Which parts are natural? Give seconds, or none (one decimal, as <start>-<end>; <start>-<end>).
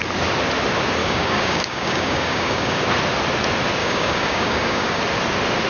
0.0-1.0; 2.8-3.8; 5.0-5.7